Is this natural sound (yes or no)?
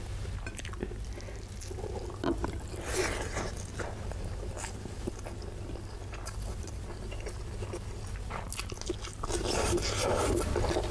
yes